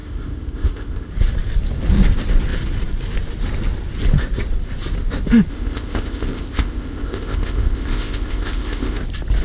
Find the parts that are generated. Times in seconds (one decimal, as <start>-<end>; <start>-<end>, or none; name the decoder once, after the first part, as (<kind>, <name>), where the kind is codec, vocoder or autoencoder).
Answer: 0.0-1.1 (codec, ZipCodec); 5.5-9.0